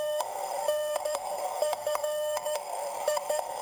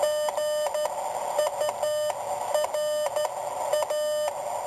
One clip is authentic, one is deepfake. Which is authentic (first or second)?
second